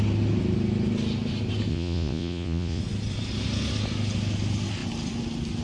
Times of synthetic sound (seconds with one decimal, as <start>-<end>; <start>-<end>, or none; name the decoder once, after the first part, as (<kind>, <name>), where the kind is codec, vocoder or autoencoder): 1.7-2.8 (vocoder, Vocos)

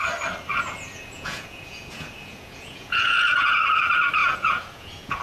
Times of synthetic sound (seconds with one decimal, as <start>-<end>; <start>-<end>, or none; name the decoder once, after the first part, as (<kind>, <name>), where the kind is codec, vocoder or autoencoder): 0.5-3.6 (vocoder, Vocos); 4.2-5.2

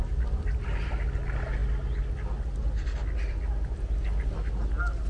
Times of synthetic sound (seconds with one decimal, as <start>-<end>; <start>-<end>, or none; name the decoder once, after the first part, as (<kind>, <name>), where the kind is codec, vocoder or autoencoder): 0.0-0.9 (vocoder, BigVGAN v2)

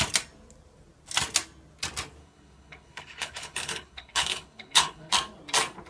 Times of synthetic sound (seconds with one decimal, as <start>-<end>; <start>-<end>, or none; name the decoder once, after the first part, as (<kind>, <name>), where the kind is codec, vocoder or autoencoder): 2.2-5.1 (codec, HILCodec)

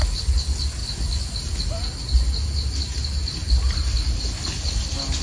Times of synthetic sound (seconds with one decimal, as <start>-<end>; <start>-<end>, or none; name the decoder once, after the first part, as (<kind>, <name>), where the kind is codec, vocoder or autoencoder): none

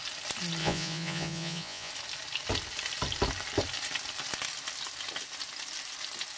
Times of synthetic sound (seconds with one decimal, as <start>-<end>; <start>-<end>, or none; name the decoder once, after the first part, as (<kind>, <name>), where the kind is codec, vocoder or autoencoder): 0.6-1.9 (vocoder, Vocos)

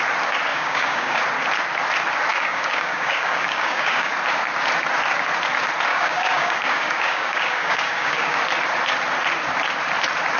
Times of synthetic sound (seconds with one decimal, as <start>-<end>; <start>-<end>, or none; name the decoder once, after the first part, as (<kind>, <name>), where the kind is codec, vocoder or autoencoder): 0.5-1.2 (codec, DAC); 2.3-4.1; 5.9-8.4